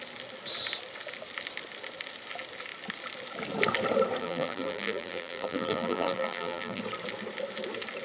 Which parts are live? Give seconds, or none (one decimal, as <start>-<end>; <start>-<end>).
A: 0.0-4.2; 6.8-8.0